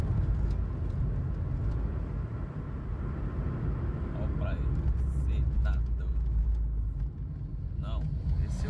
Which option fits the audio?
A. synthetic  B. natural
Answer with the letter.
B